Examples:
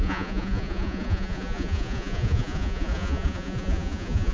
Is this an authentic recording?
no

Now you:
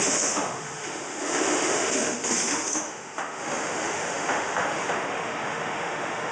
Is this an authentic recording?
no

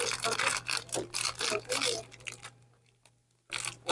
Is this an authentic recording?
yes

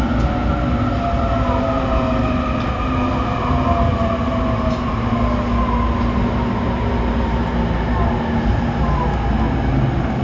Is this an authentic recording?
yes